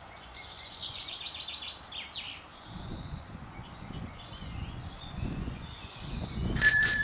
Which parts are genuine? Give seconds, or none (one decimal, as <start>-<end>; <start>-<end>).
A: 1.2-2.5